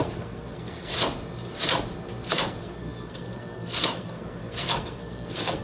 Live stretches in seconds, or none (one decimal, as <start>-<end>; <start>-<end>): 0.9-2.3